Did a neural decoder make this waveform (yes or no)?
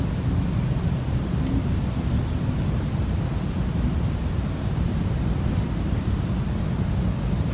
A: no